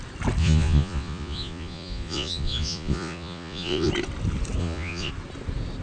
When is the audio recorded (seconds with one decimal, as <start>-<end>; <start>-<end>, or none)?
0.0-0.4; 3.9-4.6; 5.1-5.8